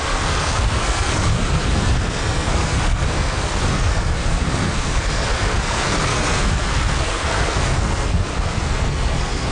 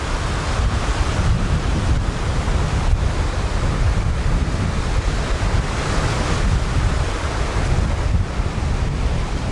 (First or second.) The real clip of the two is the second